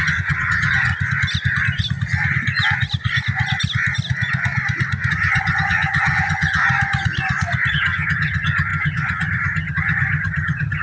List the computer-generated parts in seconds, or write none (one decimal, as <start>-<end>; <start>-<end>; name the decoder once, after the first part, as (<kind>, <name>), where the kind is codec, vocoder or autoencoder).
0.0-0.9 (vocoder, HiFi-GAN); 5.1-6.6; 7.7-10.8